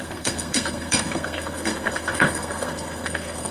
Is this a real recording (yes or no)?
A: no